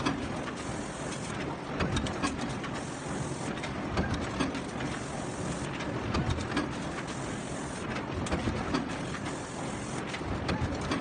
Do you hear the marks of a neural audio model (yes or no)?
no